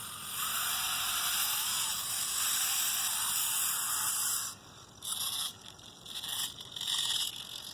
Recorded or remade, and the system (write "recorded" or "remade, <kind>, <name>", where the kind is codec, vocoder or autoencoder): recorded